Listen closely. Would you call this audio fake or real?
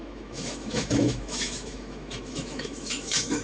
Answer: fake